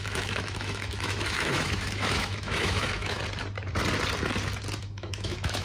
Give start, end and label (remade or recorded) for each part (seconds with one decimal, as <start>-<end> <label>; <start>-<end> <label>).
0.0-3.2 remade; 3.2-4.8 recorded; 4.8-5.6 remade